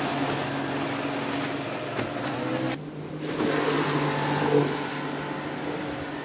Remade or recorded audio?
recorded